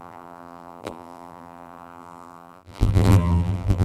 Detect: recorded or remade remade